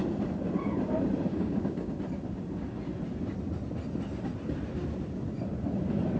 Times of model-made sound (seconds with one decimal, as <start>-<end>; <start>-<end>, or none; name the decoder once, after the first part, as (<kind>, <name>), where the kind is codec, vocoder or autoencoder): 1.3-1.9 (codec, DAC)